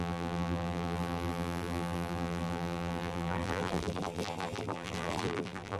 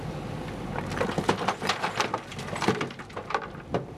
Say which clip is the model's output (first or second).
first